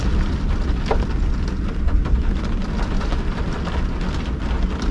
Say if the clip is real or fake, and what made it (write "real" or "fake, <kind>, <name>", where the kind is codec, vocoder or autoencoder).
real